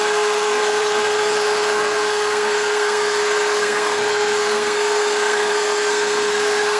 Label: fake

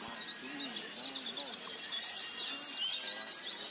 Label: real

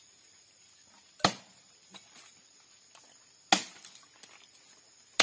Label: real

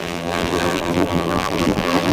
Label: fake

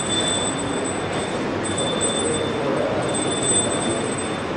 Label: real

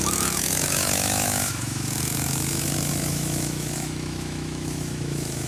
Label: fake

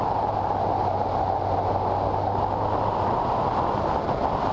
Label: real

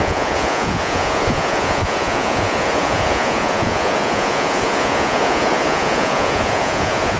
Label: fake